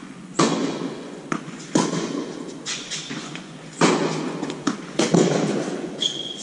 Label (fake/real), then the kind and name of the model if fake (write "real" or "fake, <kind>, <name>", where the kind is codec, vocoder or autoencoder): fake, vocoder, Vocos